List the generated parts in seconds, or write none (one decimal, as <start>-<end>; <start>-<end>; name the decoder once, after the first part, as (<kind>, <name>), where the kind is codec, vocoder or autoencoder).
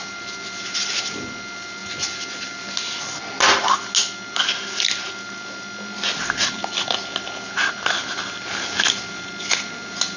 none